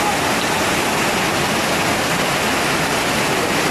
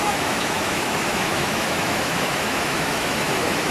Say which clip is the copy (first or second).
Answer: second